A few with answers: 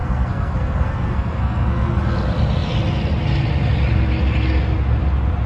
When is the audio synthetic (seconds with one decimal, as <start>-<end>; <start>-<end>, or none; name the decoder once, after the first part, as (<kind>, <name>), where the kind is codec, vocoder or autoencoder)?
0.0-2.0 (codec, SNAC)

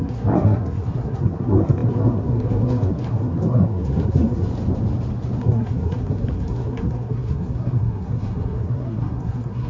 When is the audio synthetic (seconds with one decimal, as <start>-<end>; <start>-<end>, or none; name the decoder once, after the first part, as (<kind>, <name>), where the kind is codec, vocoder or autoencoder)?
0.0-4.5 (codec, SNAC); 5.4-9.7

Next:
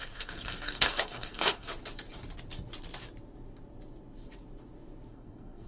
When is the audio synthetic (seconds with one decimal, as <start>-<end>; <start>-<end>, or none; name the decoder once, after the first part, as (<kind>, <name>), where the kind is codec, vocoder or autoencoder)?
0.0-1.7 (codec, SNAC); 5.1-5.7

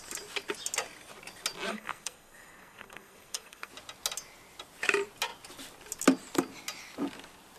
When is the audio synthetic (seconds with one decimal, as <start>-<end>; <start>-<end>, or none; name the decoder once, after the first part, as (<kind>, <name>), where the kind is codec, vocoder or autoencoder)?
1.7-3.7 (codec, SNAC)